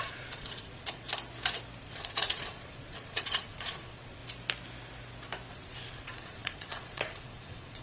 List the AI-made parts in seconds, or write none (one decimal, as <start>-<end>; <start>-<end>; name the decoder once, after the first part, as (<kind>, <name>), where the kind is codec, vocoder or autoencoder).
0.0-1.1 (vocoder, Vocos); 1.8-4.2; 5.5-7.8